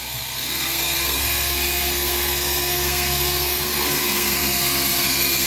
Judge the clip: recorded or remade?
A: remade